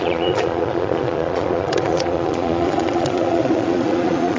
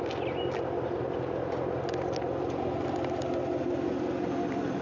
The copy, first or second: first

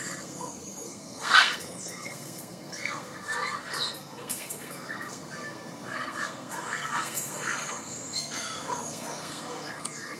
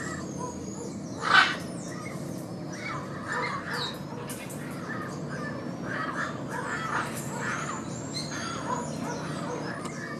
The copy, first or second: first